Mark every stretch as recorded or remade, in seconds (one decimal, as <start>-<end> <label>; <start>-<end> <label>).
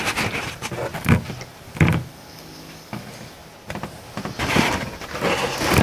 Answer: 0.0-2.1 recorded; 2.1-3.0 remade; 3.0-5.8 recorded